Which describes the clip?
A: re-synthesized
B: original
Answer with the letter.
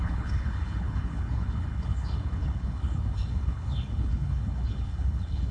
A